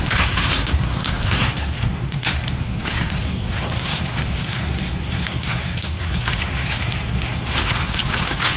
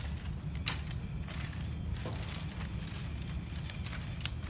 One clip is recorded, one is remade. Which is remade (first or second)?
first